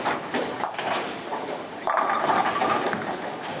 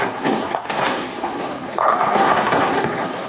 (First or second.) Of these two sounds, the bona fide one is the first